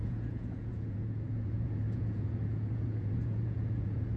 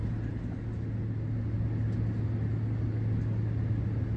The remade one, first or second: first